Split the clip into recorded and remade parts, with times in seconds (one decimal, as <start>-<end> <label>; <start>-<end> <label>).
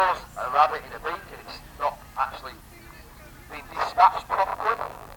0.0-4.5 recorded; 4.5-5.2 remade